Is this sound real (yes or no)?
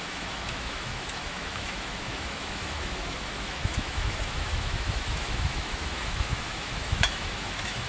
no